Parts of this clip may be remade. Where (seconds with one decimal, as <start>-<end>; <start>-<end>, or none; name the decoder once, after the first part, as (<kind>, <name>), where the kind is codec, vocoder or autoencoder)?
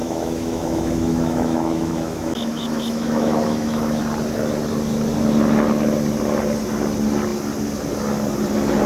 0.0-4.0 (autoencoder, DAC-VAE)